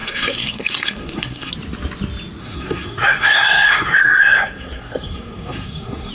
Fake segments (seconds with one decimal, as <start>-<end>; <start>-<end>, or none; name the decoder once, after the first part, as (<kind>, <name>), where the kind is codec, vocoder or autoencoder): 0.0-1.5 (codec, SNAC); 2.4-6.1